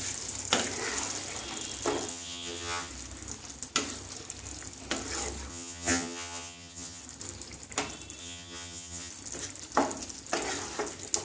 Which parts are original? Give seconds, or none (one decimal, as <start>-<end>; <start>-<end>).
0.0-2.1; 2.9-5.5; 7.0-8.2; 9.1-11.2